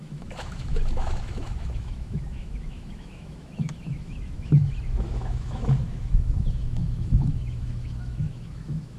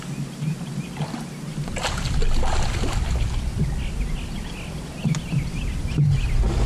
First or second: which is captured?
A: second